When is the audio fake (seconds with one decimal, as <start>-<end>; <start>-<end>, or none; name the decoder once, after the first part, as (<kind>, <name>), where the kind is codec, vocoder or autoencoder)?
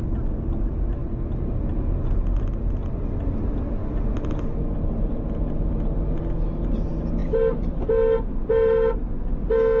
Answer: none